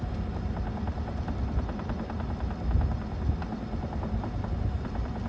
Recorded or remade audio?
recorded